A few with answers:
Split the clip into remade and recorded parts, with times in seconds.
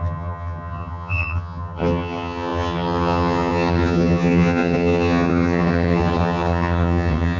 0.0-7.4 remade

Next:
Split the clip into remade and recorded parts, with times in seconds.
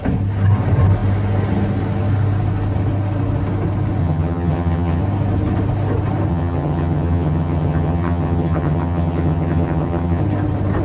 0.0-4.0 recorded; 4.0-5.0 remade; 5.0-6.3 recorded; 6.3-10.2 remade; 10.2-10.8 recorded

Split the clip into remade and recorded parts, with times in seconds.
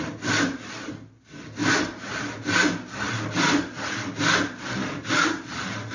0.0-5.9 recorded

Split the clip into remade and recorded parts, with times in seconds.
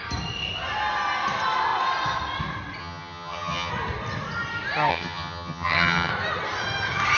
0.0-2.8 recorded; 2.8-3.7 remade; 3.7-4.9 recorded; 4.9-6.1 remade; 6.1-7.2 recorded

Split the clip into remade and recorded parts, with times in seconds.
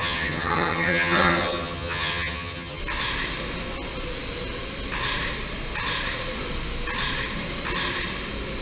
0.0-2.8 remade; 2.8-8.6 recorded